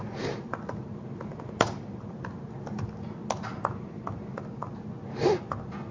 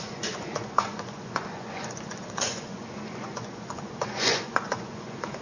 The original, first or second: first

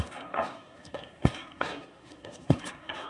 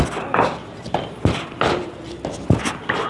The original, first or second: second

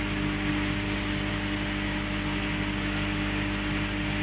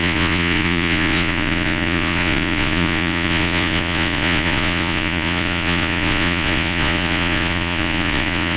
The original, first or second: first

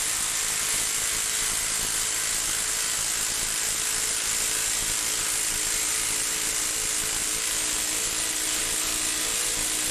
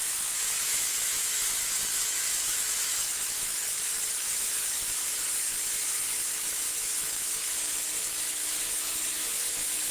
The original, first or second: first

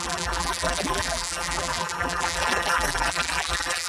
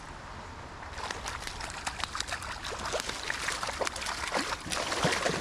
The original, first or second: second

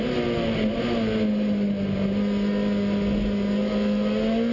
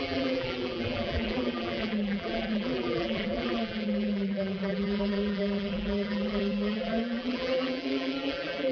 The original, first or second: first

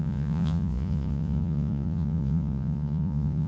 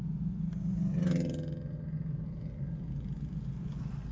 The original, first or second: second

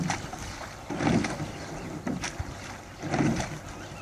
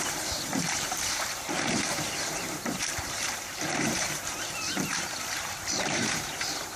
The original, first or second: first